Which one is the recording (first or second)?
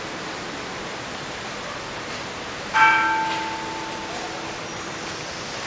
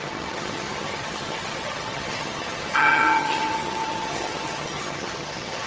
first